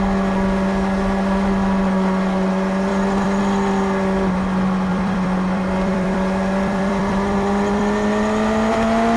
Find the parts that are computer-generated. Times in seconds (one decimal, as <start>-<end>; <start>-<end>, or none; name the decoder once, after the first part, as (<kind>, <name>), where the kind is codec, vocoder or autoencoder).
2.9-3.4 (vocoder, BigVGAN v2); 4.9-7.8

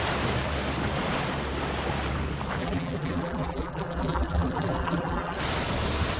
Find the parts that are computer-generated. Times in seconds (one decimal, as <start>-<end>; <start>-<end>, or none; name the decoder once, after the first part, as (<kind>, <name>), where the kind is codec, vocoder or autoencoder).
2.6-5.4 (vocoder, BigVGAN v2)

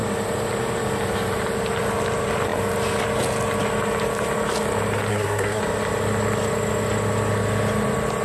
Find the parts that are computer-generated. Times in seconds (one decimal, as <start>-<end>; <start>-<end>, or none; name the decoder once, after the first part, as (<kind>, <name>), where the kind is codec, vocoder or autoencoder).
5.1-5.6 (codec, SNAC)

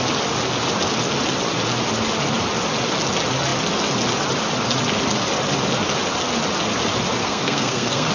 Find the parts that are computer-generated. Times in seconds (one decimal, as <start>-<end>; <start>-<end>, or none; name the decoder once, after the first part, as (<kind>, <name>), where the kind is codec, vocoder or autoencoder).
7.2-8.1 (codec, SNAC)

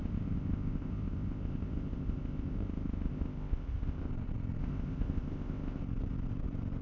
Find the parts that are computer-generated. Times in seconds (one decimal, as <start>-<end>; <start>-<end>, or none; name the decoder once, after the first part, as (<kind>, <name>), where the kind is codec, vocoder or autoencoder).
0.0-4.1 (codec, ZipCodec); 4.6-5.8

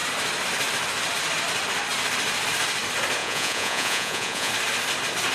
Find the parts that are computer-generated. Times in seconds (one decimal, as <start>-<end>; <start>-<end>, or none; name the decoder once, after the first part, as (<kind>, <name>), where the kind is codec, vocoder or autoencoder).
3.2-4.5 (vocoder, Vocos)